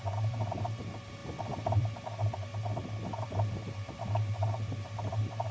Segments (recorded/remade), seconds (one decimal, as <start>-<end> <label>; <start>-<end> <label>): 0.0-1.2 remade; 1.2-1.8 recorded; 1.8-2.5 remade; 2.5-3.1 recorded; 3.1-5.5 remade